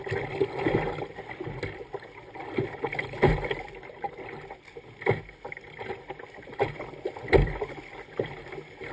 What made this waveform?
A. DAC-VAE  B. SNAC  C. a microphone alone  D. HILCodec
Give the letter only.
C